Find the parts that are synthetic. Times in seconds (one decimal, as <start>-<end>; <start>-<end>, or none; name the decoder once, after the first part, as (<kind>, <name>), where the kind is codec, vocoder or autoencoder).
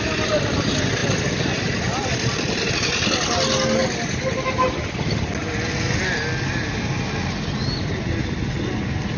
none